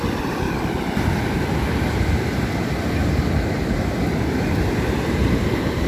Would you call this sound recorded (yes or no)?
yes